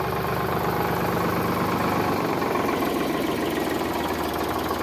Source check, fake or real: real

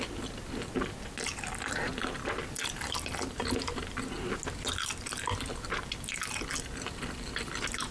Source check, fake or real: real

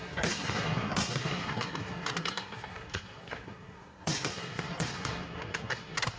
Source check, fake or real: fake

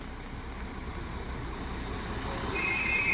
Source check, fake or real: real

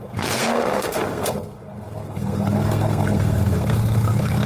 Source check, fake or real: fake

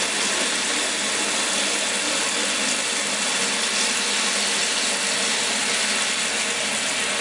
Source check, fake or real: real